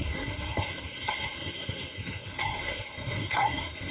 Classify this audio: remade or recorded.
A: remade